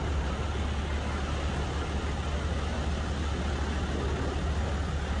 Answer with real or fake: real